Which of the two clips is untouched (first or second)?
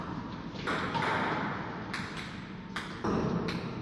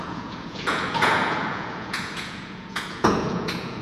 first